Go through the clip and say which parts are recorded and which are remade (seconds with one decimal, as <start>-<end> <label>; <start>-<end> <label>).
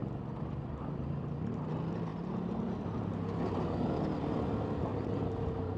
0.0-0.8 remade; 0.8-4.9 recorded; 4.9-5.8 remade